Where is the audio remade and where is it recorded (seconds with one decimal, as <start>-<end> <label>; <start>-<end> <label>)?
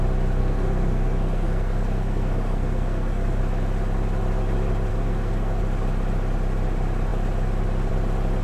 0.0-0.4 recorded; 0.4-3.4 remade; 3.4-4.9 recorded; 4.9-5.6 remade; 5.6-8.4 recorded